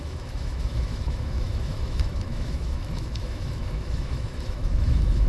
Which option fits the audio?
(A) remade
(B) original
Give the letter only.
A